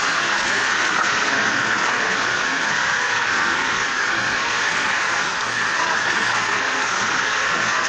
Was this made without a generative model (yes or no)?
no